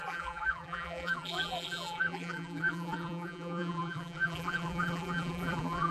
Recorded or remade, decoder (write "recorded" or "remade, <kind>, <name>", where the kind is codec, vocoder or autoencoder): remade, vocoder, BigVGAN v2